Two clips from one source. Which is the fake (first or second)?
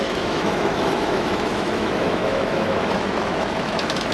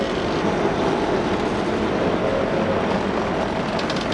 first